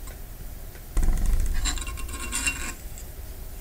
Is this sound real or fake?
real